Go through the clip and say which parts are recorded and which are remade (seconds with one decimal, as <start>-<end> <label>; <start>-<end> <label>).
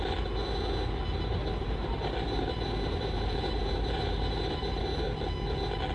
0.0-1.3 recorded; 1.3-4.8 remade; 4.8-5.9 recorded